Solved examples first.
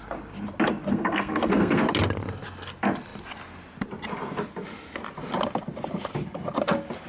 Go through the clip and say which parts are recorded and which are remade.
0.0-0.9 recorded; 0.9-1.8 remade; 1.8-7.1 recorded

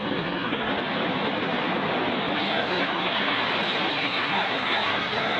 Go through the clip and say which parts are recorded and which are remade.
0.0-0.7 remade; 0.7-2.4 recorded; 2.4-3.4 remade; 3.4-3.9 recorded; 3.9-5.4 remade

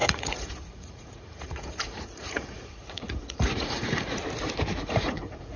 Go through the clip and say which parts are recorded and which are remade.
0.0-4.2 remade; 4.2-4.8 recorded; 4.8-5.6 remade

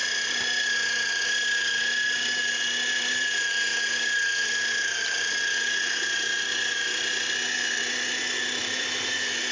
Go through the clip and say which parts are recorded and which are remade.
0.0-3.1 recorded; 3.1-3.7 remade; 3.7-7.7 recorded; 7.7-9.5 remade

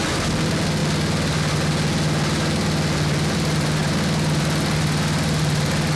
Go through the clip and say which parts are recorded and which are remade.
0.0-6.0 recorded